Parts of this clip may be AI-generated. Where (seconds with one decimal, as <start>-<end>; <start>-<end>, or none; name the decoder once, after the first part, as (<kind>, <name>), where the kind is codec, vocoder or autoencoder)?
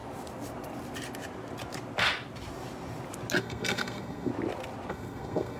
3.4-4.3 (codec, SNAC); 4.9-5.6